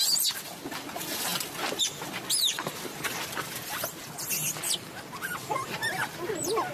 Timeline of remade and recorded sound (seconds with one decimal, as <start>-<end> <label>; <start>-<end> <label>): 0.0-6.7 recorded